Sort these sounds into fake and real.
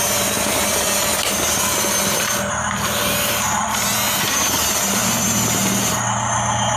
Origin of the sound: real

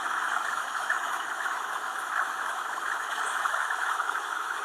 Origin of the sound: fake